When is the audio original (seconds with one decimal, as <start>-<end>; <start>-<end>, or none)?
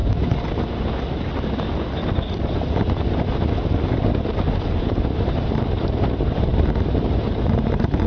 0.0-4.6